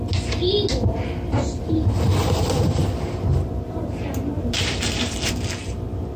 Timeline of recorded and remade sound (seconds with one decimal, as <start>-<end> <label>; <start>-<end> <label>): 0.0-1.6 recorded; 1.6-5.3 remade; 5.3-6.2 recorded